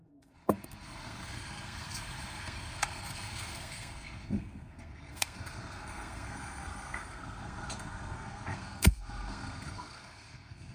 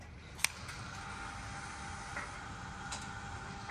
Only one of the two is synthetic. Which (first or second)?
first